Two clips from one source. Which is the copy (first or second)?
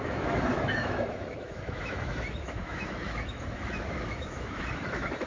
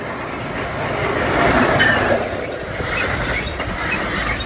first